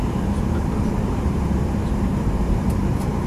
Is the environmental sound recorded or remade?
remade